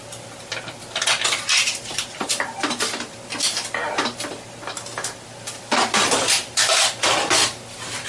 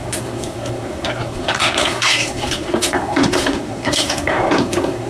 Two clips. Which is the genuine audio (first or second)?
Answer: first